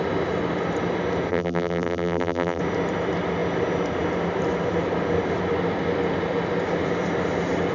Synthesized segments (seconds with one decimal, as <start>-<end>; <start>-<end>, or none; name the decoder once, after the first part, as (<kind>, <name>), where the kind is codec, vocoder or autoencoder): 1.3-2.6 (vocoder, BigVGAN v2)